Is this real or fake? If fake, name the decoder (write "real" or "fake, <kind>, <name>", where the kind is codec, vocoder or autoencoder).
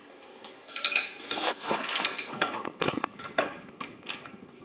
fake, codec, SNAC